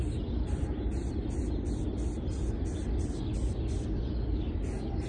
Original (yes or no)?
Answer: yes